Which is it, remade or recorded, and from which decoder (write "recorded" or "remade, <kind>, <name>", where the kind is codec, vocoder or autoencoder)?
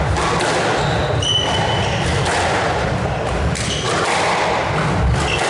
recorded